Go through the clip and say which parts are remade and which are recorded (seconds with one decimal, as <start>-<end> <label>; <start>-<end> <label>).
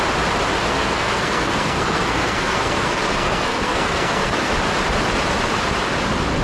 0.0-0.7 recorded; 0.7-4.5 remade; 4.5-6.4 recorded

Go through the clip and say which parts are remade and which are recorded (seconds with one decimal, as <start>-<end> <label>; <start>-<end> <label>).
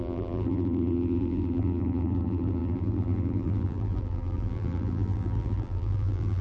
0.0-6.4 remade